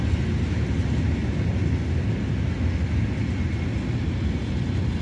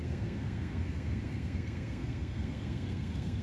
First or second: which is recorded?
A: first